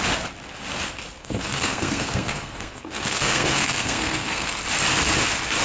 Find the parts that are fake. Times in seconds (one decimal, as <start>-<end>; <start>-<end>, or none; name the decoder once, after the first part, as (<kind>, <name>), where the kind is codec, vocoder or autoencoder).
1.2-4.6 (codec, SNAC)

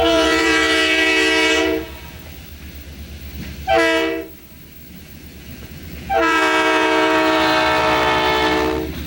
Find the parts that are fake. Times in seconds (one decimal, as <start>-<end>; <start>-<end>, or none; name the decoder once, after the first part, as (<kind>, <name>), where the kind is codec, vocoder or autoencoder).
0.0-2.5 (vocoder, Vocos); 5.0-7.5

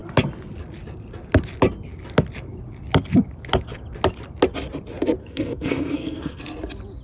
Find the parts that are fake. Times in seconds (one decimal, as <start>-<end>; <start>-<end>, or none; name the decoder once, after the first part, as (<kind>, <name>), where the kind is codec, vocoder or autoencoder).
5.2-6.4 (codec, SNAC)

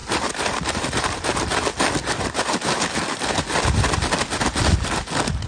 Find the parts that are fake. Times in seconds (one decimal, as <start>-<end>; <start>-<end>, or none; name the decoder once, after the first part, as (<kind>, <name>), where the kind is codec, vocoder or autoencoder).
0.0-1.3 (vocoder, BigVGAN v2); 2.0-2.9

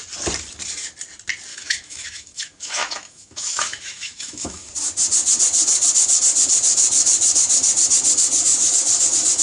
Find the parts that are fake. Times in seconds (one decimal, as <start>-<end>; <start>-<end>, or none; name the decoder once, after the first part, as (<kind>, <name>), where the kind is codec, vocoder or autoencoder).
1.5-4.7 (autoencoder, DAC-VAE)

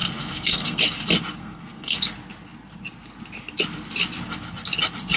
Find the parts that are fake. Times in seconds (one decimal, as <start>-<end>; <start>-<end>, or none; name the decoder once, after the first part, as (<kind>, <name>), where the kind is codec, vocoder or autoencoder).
0.0-0.8 (codec, SNAC); 1.4-2.0